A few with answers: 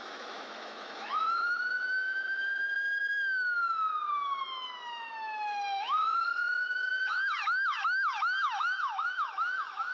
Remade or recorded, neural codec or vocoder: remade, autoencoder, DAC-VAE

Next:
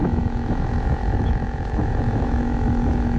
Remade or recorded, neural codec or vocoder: remade, autoencoder, DAC-VAE